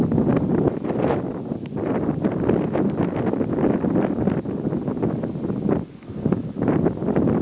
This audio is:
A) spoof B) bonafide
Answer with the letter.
B